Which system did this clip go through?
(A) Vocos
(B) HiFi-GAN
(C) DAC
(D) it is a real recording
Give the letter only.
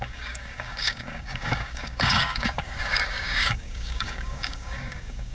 C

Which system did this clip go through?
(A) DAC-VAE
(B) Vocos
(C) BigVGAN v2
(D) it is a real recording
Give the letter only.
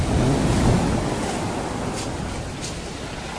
D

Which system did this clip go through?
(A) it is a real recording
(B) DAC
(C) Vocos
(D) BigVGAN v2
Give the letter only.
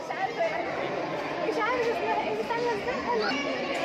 A